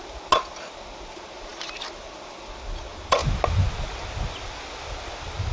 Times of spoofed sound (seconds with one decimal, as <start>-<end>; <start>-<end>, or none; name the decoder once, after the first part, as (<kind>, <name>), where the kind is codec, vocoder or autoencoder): none